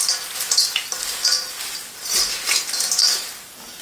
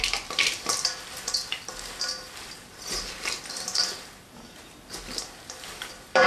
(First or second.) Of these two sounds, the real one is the first